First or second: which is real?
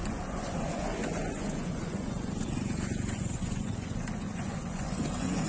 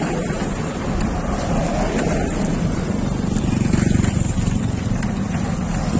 second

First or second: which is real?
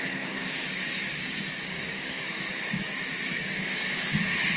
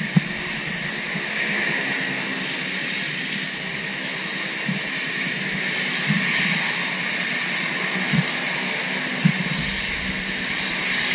second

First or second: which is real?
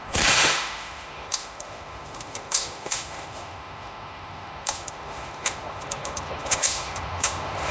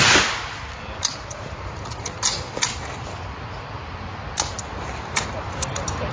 second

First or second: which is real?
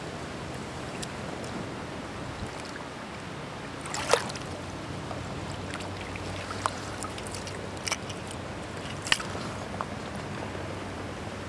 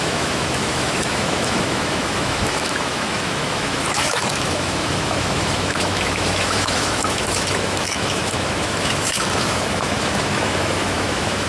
first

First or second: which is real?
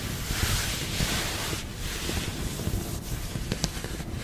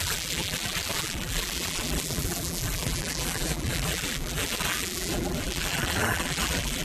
first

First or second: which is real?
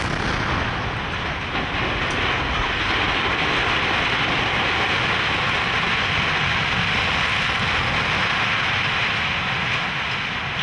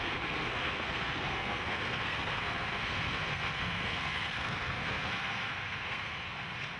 first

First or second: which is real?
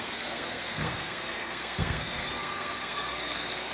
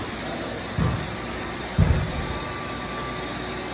second